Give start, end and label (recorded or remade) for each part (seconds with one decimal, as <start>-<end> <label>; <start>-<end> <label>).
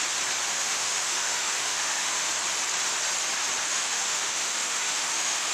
0.0-0.5 recorded; 0.5-2.3 remade; 2.3-3.6 recorded; 3.6-5.5 remade